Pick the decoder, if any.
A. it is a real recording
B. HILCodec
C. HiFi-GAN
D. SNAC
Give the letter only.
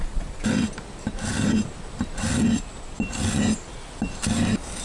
A